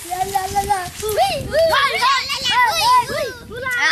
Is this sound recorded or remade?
recorded